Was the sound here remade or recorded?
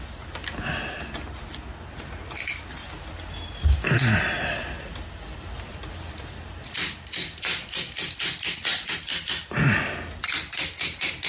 recorded